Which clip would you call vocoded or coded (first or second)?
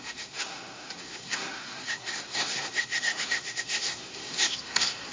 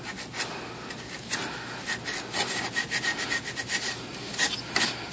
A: first